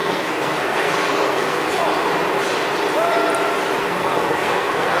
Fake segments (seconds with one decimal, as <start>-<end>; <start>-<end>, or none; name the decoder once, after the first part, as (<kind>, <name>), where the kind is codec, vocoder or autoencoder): 0.0-1.8 (codec, SNAC); 3.8-5.0